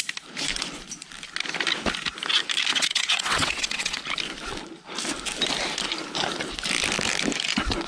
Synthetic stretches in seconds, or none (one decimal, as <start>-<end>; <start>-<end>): 2.7-4.0